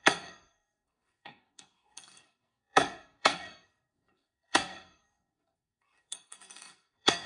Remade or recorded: remade